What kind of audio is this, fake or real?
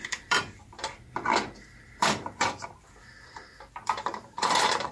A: fake